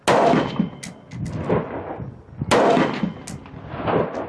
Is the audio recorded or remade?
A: recorded